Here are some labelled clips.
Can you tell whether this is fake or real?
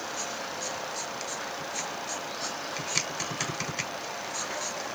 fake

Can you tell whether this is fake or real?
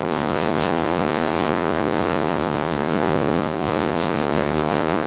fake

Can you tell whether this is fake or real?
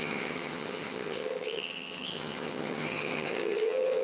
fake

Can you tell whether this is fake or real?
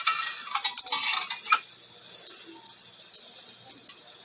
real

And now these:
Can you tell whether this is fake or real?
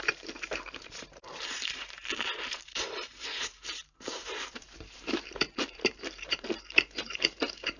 fake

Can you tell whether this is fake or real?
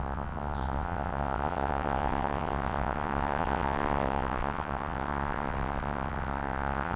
fake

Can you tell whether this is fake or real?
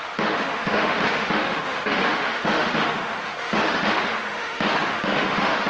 fake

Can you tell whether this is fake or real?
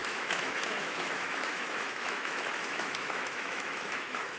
fake